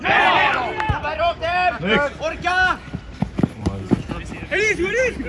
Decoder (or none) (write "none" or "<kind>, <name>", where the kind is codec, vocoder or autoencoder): vocoder, BigVGAN v2